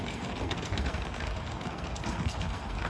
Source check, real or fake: fake